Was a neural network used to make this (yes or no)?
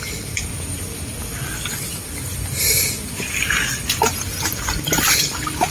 no